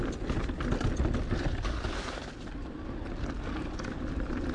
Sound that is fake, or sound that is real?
real